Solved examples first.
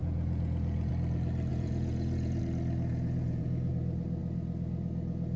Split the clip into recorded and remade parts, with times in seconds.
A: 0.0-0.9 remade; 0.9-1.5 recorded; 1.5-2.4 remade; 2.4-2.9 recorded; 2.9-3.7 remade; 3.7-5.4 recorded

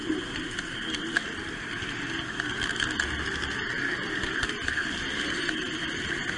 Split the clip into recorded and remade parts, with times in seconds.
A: 0.0-6.4 recorded

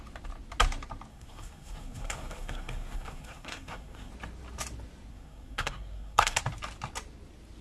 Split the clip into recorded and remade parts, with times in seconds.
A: 0.0-1.1 recorded; 1.1-4.1 remade; 4.1-5.1 recorded; 5.1-6.4 remade; 6.4-7.6 recorded

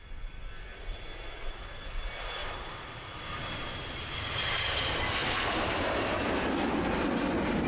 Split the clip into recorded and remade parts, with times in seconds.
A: 0.0-2.4 recorded; 2.4-6.3 remade; 6.3-7.7 recorded

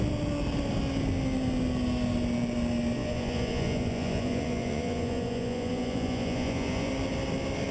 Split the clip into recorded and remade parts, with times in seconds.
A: 0.0-3.0 recorded; 3.0-6.9 remade; 6.9-7.7 recorded

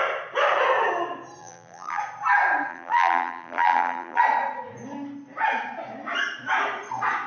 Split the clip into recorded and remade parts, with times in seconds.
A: 0.0-1.4 recorded; 1.4-2.0 remade; 2.0-2.7 recorded; 2.7-4.2 remade; 4.2-7.3 recorded